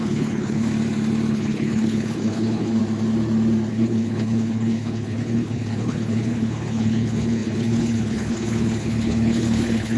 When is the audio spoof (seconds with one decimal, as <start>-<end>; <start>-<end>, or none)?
0.0-0.7; 1.3-2.8; 3.7-10.0